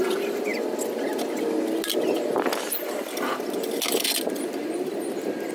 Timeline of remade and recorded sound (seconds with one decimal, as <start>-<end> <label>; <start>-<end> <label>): 0.0-5.5 recorded